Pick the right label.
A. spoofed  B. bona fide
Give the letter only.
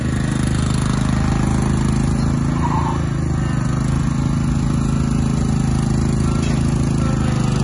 B